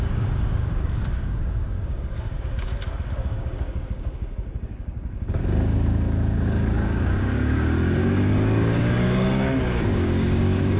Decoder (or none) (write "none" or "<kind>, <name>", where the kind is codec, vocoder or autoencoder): codec, DAC